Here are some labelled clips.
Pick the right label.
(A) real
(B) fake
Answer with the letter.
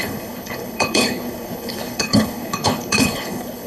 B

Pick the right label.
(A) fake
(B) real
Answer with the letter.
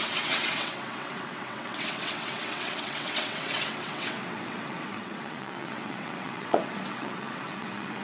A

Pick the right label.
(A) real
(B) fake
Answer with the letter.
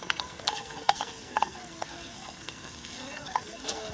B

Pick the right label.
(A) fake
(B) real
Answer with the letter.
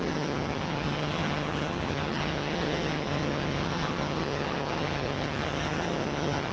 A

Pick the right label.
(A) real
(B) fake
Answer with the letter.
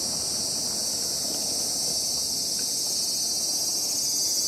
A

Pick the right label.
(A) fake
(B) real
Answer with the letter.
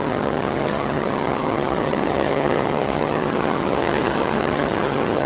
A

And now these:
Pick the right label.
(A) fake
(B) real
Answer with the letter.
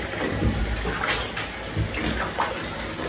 B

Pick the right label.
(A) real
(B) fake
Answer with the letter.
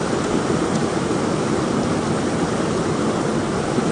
A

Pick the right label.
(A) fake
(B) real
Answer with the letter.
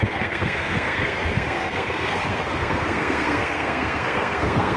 A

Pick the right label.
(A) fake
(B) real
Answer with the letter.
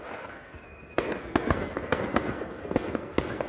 A